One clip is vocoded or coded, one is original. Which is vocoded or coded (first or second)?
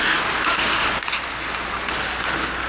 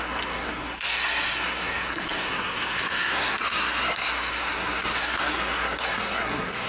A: second